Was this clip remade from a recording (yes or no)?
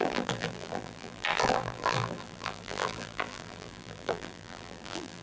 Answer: yes